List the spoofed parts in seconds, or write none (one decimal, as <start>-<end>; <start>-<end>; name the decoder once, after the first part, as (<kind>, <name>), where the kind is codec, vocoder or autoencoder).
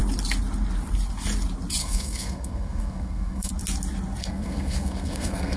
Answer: 1.8-3.5 (codec, SNAC); 4.2-5.6